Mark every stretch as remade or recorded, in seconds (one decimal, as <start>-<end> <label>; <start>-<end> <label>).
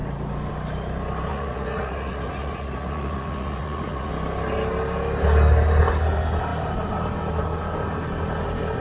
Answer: 0.0-1.3 recorded; 1.3-4.1 remade; 4.1-8.8 recorded